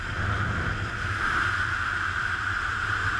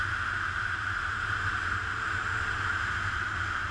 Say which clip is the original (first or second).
second